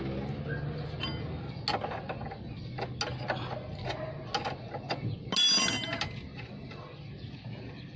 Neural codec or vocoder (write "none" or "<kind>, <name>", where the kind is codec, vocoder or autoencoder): none